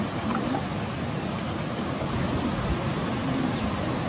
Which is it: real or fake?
real